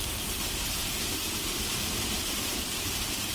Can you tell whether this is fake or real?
fake